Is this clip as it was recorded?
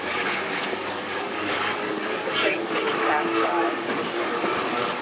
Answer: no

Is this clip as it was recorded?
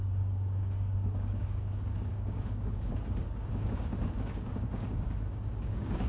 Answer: no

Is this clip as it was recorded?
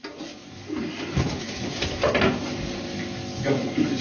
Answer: yes